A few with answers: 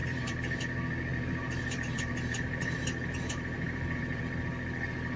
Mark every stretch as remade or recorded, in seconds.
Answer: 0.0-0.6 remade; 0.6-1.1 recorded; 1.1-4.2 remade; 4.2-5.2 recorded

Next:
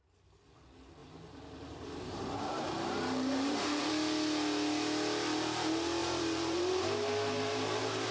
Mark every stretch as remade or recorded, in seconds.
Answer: 0.0-1.0 recorded; 1.0-3.9 remade; 3.9-6.0 recorded; 6.0-8.1 remade

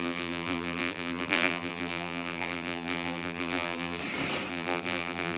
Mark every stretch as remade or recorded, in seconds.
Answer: 0.0-4.0 remade; 4.0-4.5 recorded; 4.5-5.4 remade

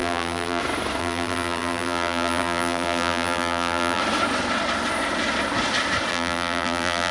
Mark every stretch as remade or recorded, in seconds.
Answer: 0.0-0.6 remade; 0.6-1.0 recorded; 1.0-4.0 remade; 4.0-6.1 recorded; 6.1-7.1 remade

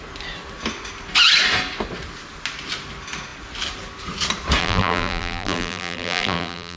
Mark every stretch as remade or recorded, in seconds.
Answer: 0.0-4.6 recorded; 4.6-6.8 remade

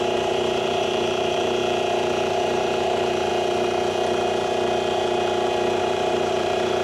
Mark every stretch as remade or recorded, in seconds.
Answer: 0.0-1.6 remade; 1.6-2.3 recorded; 2.3-3.3 remade; 3.3-5.8 recorded; 5.8-6.8 remade